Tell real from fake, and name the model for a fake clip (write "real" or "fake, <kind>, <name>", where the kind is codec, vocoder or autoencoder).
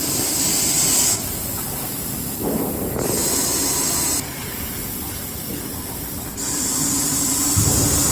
real